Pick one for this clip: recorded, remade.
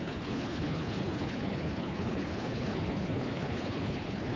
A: remade